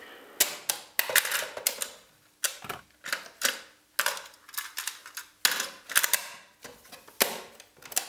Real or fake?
real